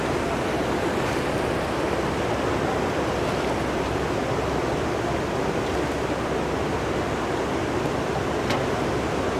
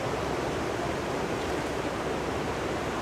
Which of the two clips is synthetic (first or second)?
second